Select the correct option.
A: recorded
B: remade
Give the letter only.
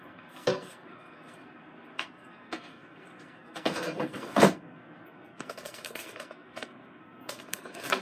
B